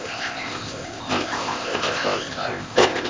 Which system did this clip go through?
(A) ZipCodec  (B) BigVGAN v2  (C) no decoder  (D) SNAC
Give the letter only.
A